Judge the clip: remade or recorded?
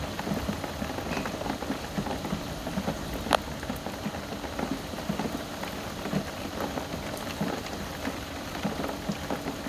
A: remade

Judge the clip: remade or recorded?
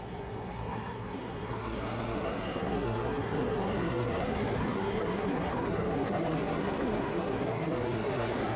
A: remade